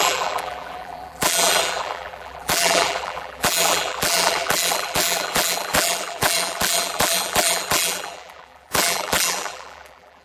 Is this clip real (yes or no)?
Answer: no